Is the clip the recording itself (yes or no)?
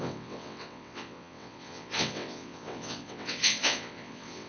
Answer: no